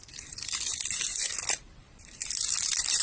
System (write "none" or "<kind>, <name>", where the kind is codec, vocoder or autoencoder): none